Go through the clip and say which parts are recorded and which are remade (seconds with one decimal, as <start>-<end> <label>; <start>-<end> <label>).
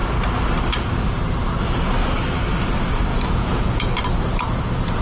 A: 0.0-3.1 recorded; 3.1-3.9 remade; 3.9-5.0 recorded